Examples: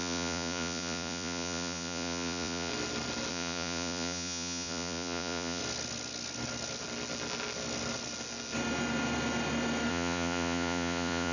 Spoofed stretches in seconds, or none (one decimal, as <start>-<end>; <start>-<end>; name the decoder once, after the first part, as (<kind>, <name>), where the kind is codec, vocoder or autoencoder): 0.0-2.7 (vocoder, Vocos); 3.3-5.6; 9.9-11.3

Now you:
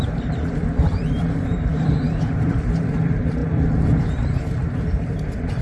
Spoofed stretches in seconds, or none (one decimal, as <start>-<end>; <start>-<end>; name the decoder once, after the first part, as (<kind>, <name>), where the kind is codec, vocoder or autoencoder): 0.0-3.4 (vocoder, BigVGAN v2); 4.0-5.6

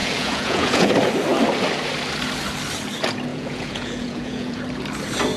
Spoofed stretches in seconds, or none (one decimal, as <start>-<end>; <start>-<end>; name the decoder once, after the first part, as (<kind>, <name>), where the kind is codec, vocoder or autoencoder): 0.0-0.9 (vocoder, Vocos); 3.3-4.6

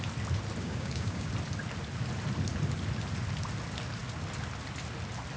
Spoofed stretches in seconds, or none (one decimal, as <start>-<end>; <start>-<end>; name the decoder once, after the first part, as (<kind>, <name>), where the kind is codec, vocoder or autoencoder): 0.6-1.3 (codec, DAC)